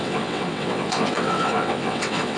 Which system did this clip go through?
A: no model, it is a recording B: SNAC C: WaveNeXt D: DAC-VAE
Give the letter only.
C